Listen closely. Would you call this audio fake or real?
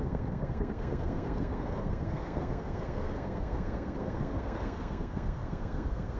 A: fake